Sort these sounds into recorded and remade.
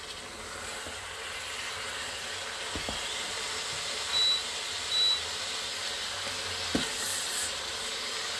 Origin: recorded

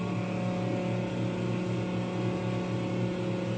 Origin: recorded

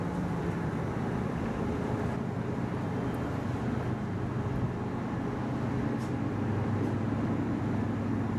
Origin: recorded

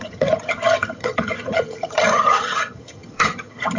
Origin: remade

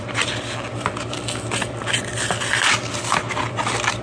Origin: recorded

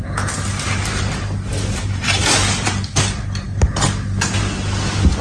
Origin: recorded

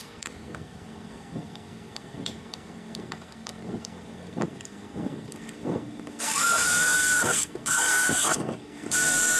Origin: remade